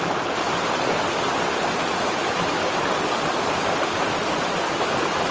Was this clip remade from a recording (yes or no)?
no